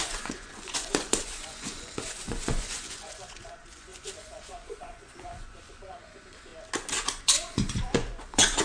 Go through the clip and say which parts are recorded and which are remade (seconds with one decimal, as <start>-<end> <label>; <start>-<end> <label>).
0.0-6.5 remade; 6.5-7.2 recorded; 7.2-8.6 remade